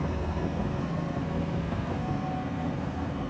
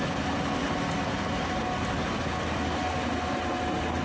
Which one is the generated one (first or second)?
first